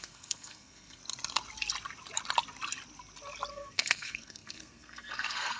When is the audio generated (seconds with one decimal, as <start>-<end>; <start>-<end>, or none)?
0.0-1.0; 3.5-5.6